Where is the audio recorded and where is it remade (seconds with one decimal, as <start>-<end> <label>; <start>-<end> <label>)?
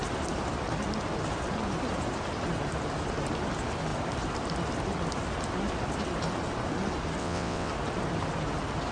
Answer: 0.0-7.2 recorded; 7.2-7.7 remade; 7.7-8.9 recorded